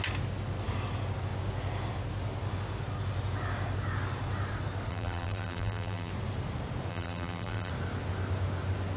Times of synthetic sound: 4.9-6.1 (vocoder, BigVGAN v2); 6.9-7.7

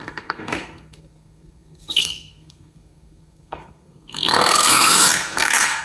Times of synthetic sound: 0.0-5.8 (codec, SNAC)

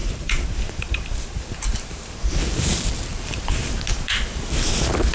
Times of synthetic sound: 0.0-2.3 (vocoder, BigVGAN v2); 3.1-4.1

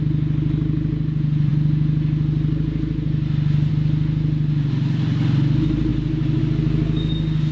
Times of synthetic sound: none